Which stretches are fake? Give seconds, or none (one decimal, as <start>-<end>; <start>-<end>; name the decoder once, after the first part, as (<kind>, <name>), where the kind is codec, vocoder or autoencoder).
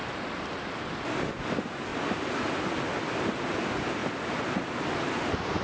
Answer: 0.0-1.3 (vocoder, BigVGAN v2); 1.9-2.5; 4.0-4.7